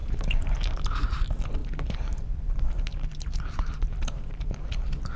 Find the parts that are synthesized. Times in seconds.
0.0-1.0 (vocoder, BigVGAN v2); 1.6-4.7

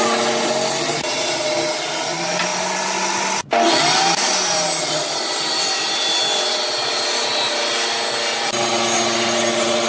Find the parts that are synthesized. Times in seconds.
none

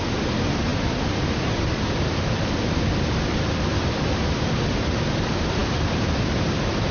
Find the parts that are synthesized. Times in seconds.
0.0-5.6 (vocoder, BigVGAN v2)